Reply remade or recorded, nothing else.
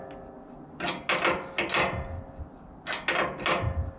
recorded